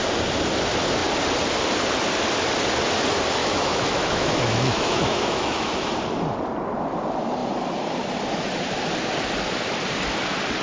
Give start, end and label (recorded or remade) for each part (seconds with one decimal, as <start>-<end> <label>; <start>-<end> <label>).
0.0-3.4 recorded; 3.4-5.9 remade; 5.9-10.6 recorded